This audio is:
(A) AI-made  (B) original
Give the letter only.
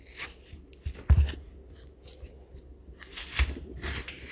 B